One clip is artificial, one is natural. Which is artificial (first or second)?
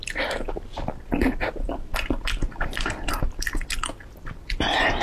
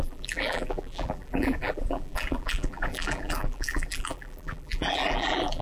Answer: second